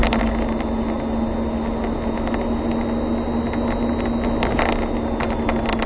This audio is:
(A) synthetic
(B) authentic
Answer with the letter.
B